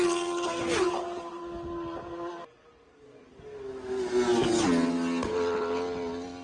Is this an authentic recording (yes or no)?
yes